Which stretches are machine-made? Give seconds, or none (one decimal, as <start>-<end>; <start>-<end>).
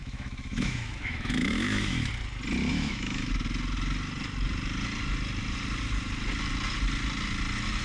0.0-2.1; 2.7-3.3